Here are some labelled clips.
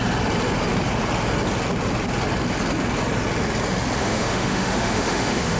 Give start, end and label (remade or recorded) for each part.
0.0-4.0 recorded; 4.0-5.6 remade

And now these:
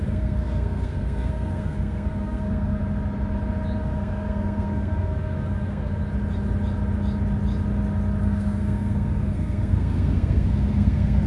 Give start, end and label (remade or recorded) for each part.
0.0-2.8 remade; 2.8-3.8 recorded; 3.8-6.0 remade; 6.0-8.2 recorded; 8.2-11.3 remade

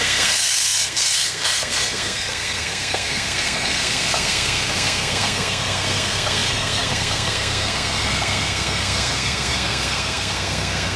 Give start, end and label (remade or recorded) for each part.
0.0-11.0 remade

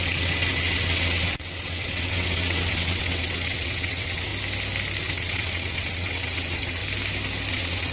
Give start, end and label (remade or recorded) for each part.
0.0-4.3 remade; 4.3-5.0 recorded; 5.0-6.8 remade; 6.8-7.5 recorded; 7.5-7.9 remade

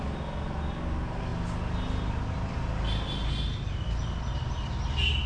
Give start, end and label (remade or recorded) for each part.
0.0-5.3 recorded

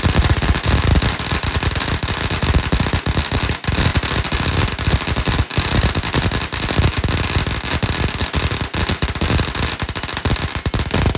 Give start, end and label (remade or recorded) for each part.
0.0-11.2 recorded

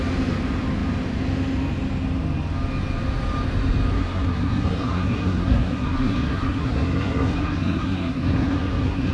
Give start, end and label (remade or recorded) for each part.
0.0-3.9 recorded; 3.9-9.1 remade